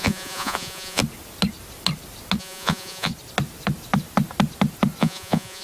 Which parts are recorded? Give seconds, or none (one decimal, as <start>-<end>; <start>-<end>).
1.0-2.4; 3.1-5.0